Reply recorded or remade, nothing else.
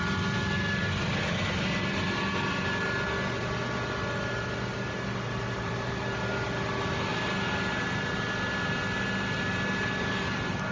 recorded